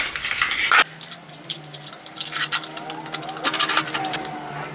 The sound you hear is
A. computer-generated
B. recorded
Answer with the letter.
B